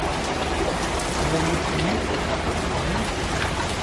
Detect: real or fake real